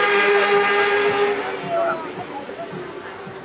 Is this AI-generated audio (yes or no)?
no